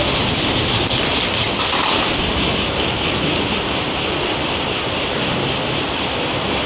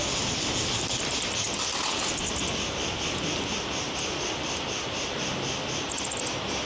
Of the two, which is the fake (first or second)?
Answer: first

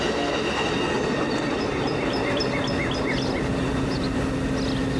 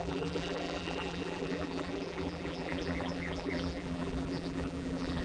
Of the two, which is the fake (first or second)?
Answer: second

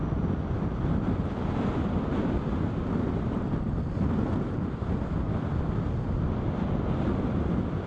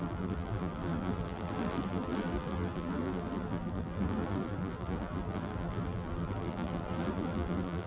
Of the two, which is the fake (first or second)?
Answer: second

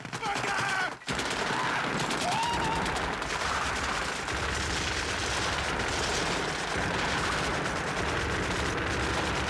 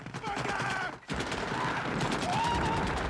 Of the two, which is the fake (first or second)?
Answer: second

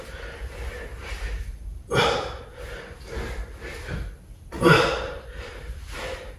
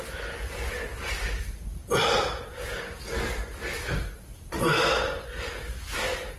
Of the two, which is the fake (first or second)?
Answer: first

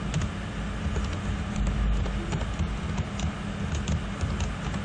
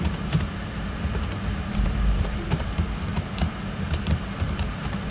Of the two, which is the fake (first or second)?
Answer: second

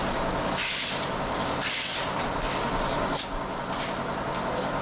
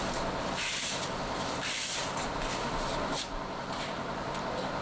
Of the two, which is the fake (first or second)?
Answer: second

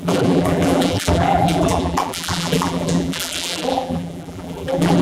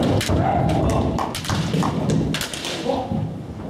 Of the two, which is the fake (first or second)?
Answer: first